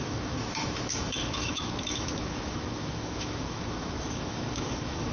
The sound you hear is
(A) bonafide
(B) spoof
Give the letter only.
B